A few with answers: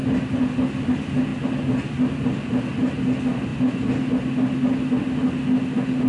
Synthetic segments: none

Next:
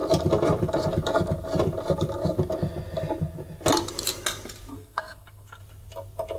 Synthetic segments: 4.7-5.6 (codec, SNAC)

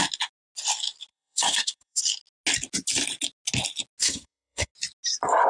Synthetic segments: 1.1-2.0 (codec, SNAC); 4.0-4.7

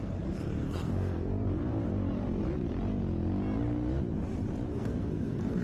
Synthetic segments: 0.0-1.3 (codec, SNAC); 4.7-5.6

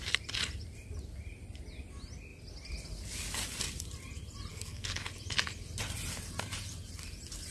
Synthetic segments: 4.5-5.1 (codec, SNAC)

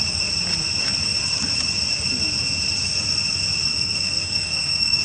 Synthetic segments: 3.7-5.0 (codec, SNAC)